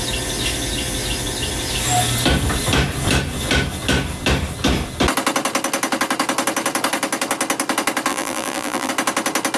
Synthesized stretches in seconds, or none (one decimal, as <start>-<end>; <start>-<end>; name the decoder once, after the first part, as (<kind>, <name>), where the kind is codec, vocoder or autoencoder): 8.1-8.9 (vocoder, BigVGAN v2)